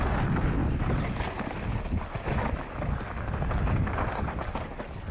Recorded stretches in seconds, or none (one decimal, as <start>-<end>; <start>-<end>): 0.0-5.1